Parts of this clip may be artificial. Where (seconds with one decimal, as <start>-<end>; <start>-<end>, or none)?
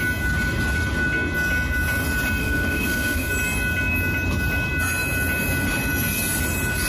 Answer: 2.4-3.3